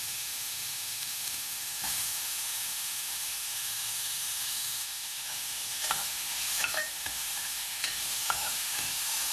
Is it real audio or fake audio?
fake